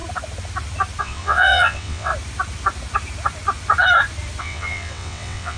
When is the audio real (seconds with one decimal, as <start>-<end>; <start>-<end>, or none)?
0.0-1.0; 2.1-4.4